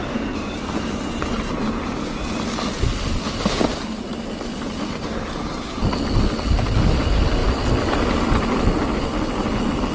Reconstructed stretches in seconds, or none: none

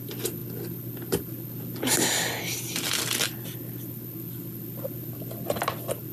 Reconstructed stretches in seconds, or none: none